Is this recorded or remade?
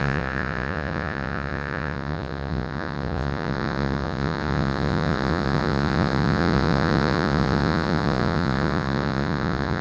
remade